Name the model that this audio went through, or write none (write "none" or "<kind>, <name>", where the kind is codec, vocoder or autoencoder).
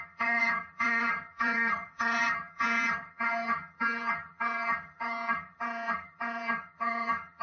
vocoder, HiFi-GAN